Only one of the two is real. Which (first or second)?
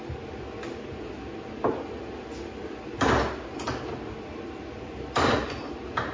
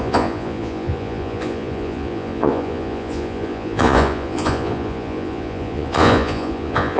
first